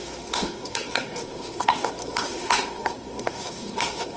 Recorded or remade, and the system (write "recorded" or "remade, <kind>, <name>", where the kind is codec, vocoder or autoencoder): remade, codec, SNAC